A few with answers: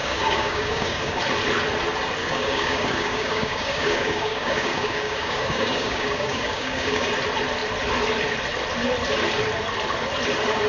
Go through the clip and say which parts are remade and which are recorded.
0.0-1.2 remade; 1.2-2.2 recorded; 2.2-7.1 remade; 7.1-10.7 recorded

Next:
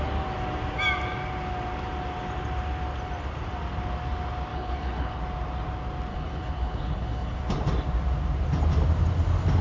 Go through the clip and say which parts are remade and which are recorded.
0.0-4.5 recorded; 4.5-5.2 remade; 5.2-6.1 recorded; 6.1-7.4 remade; 7.4-9.6 recorded

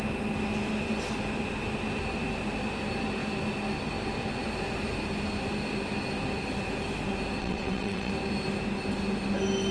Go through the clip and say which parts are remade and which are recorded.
0.0-7.4 recorded; 7.4-8.1 remade; 8.1-9.7 recorded